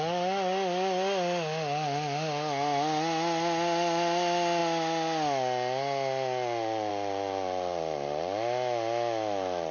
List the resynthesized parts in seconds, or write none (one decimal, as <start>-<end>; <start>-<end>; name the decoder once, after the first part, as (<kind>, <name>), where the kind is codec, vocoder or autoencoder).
none